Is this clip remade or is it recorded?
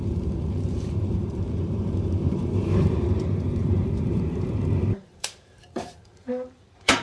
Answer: remade